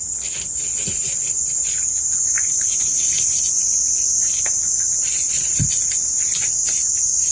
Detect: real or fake real